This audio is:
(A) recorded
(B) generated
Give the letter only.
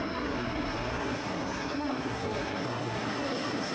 B